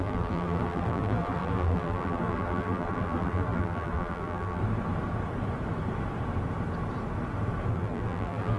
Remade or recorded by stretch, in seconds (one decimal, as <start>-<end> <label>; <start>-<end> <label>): 0.0-4.6 remade; 4.6-7.7 recorded; 7.7-8.6 remade